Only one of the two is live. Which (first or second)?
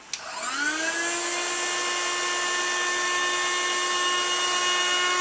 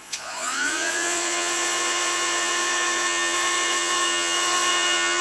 first